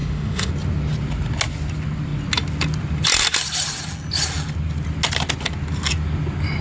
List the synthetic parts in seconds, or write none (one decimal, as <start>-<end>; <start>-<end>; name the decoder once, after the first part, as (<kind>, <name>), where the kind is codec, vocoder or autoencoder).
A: 0.0-0.5 (autoencoder, DAC-VAE)